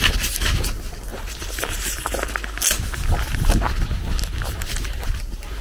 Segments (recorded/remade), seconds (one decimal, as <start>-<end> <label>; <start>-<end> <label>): 0.0-1.1 recorded; 1.1-2.1 remade; 2.1-5.6 recorded